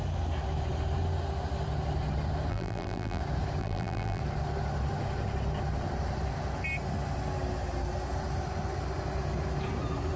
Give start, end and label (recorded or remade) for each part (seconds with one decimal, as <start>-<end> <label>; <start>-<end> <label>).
0.0-2.5 recorded; 2.5-3.2 remade; 3.2-3.6 recorded; 3.6-4.2 remade; 4.2-10.2 recorded

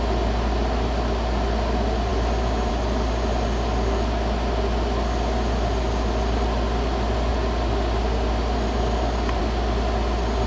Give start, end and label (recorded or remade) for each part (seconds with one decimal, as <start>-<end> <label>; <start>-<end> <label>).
0.0-10.5 recorded

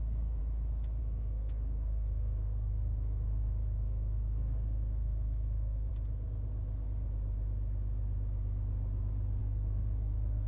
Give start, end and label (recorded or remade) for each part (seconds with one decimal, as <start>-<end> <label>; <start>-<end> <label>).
0.0-0.4 remade; 0.4-1.0 recorded; 1.0-5.9 remade; 5.9-9.4 recorded; 9.4-10.5 remade

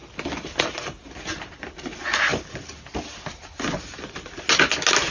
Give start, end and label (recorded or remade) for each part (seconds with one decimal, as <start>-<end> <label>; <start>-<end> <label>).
0.0-5.1 recorded

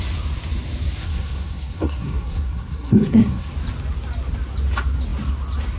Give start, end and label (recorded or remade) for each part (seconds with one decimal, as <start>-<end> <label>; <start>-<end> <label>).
0.0-1.0 recorded; 1.0-3.5 remade; 3.5-5.8 recorded

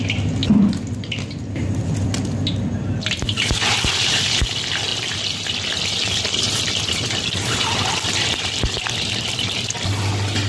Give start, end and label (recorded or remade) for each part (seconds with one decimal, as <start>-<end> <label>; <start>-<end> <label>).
0.0-10.5 recorded